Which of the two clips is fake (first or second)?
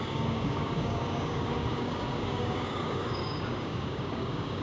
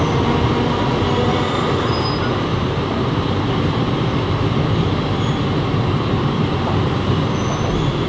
first